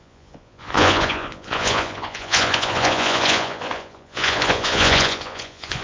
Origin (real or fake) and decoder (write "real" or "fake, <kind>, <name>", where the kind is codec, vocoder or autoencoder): fake, vocoder, Vocos